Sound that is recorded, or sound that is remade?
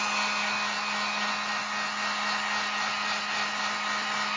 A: recorded